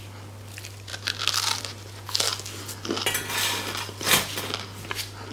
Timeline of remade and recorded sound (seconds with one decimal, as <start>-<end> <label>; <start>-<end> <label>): 0.0-5.3 recorded